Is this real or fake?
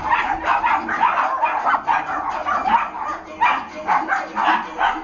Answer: real